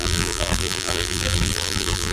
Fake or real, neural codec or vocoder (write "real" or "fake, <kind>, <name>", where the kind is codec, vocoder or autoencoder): fake, vocoder, BigVGAN v2